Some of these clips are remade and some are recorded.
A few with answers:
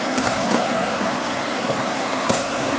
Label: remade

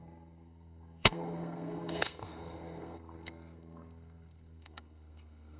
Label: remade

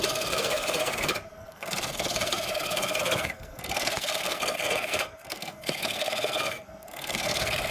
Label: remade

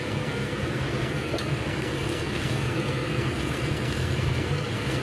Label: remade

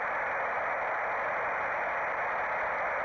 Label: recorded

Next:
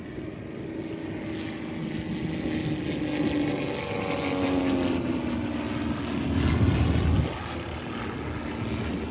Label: recorded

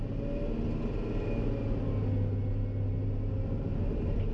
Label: recorded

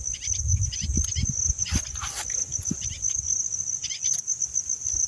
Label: recorded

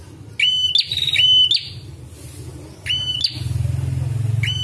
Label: recorded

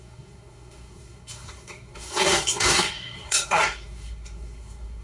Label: remade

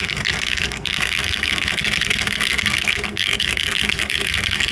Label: remade